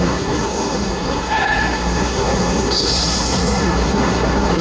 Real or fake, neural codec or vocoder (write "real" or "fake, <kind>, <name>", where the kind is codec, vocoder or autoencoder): fake, codec, SNAC